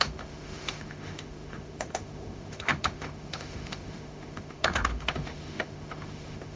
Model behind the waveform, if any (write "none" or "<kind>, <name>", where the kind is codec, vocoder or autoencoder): autoencoder, DAC-VAE